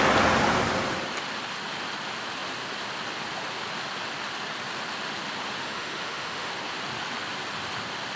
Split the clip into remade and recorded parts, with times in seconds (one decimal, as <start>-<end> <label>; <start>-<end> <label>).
0.0-5.6 recorded; 5.6-6.5 remade; 6.5-8.2 recorded